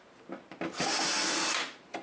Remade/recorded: remade